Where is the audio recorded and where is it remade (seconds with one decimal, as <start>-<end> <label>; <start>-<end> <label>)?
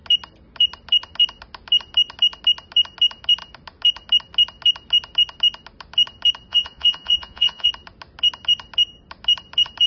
0.0-6.5 recorded; 6.5-7.7 remade; 7.7-9.9 recorded